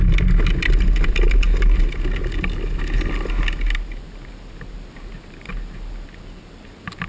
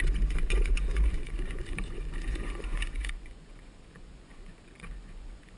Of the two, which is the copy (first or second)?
second